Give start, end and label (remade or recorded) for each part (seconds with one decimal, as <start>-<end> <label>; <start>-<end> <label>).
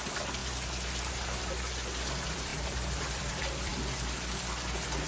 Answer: 0.0-0.4 remade; 0.4-1.1 recorded; 1.1-3.7 remade; 3.7-5.1 recorded